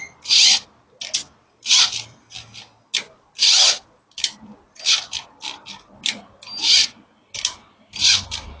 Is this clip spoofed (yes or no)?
no